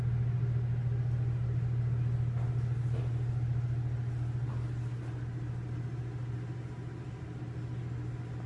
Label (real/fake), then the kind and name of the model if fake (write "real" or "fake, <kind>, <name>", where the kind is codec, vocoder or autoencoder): real